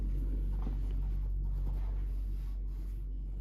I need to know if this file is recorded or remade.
recorded